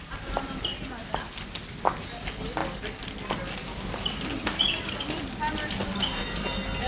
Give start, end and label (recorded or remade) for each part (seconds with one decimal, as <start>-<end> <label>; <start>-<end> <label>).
0.0-6.9 recorded